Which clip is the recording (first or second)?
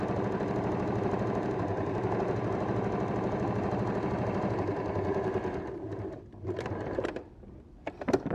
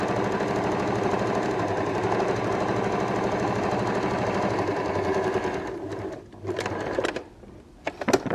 second